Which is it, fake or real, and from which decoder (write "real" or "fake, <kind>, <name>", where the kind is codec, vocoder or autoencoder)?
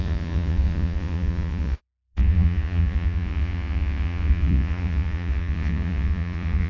fake, vocoder, Vocos